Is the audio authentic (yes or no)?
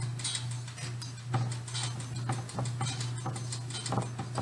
yes